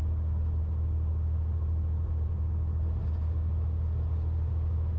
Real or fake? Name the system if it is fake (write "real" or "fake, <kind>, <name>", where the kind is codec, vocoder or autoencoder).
real